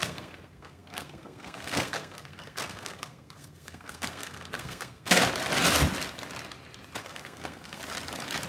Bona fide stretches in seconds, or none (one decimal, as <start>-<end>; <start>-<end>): 5.2-7.0; 7.8-8.5